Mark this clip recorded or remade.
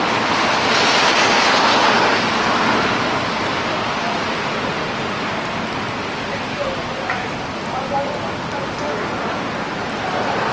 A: recorded